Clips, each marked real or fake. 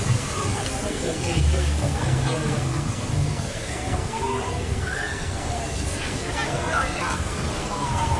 fake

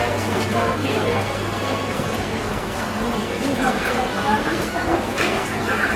fake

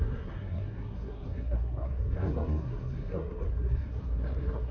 fake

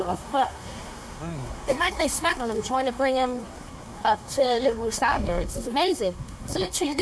fake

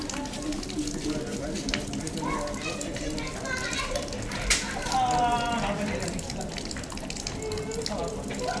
real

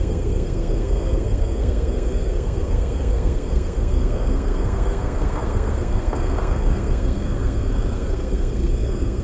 fake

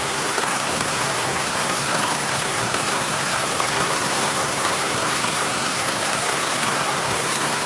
fake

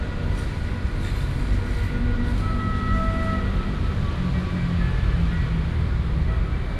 real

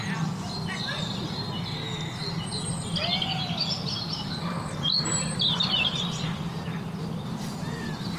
real